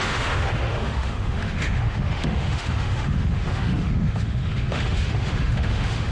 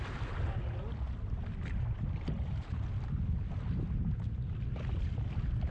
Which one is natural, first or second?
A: second